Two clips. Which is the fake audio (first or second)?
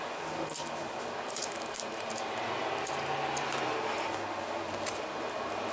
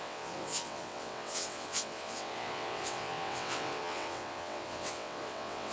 second